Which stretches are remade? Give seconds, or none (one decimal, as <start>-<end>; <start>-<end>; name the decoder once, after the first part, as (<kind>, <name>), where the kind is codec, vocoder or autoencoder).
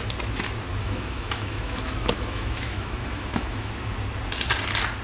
0.7-3.7 (autoencoder, DAC-VAE)